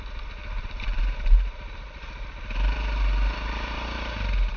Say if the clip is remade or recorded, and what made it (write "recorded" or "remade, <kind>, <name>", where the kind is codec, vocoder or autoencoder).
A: recorded